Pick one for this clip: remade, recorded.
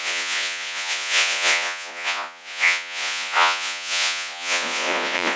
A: remade